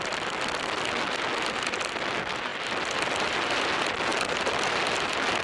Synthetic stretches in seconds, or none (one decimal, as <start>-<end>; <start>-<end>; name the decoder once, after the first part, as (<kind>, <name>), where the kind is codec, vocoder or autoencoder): none